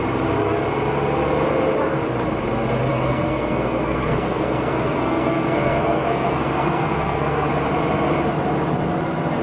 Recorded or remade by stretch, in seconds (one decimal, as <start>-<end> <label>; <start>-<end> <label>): 0.0-2.9 recorded; 2.9-7.5 remade; 7.5-9.4 recorded